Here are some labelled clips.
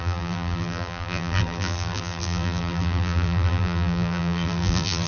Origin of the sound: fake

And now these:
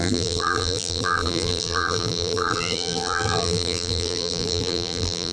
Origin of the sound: fake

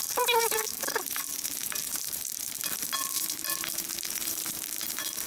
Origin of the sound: fake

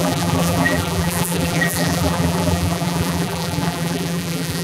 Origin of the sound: fake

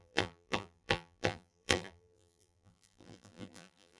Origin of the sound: fake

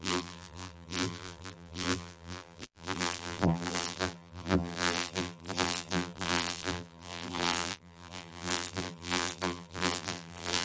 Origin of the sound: fake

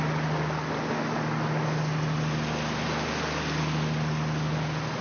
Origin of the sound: real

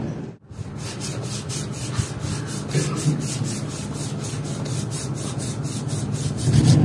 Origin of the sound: real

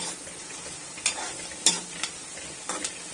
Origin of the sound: real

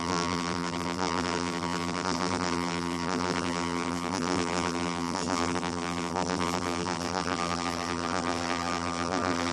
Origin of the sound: fake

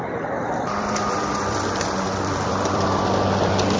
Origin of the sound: fake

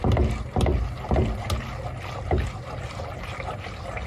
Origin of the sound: real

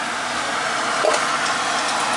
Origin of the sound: real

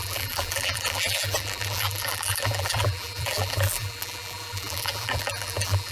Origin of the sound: fake